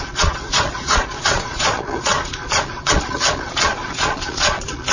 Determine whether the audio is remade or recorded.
remade